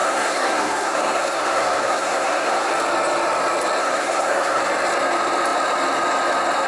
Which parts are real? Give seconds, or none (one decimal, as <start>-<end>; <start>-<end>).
2.7-3.8; 4.6-6.7

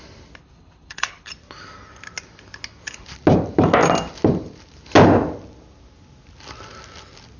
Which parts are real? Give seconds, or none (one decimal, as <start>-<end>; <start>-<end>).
0.0-0.4; 1.3-7.4

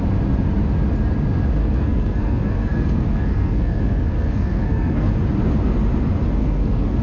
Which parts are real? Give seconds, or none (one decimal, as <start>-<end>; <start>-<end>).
0.0-1.6; 5.1-6.4

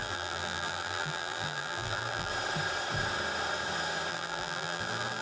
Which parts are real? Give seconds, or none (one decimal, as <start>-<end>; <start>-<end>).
2.3-4.1

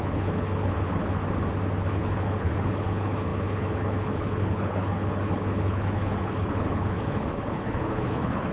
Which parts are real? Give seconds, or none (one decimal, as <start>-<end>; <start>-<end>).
1.2-1.8

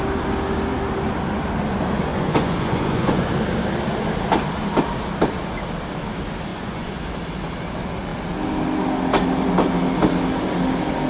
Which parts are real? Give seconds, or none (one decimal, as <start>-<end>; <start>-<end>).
0.0-2.1; 3.3-6.5; 7.0-11.1